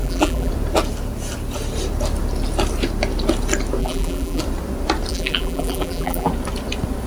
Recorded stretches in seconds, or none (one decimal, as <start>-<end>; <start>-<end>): 0.5-3.8; 4.4-5.1; 6.3-7.1